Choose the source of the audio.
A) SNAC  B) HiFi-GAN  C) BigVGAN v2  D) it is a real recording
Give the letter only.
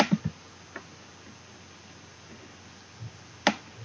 D